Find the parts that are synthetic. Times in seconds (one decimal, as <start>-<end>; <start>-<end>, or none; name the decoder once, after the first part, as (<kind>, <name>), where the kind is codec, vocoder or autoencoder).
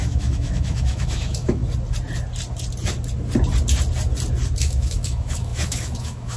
0.0-1.6 (autoencoder, DAC-VAE); 4.6-6.4